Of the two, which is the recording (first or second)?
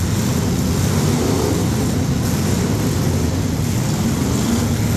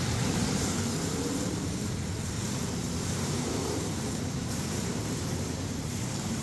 first